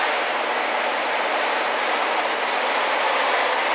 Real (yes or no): no